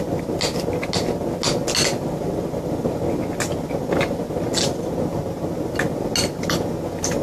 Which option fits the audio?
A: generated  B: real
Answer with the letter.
B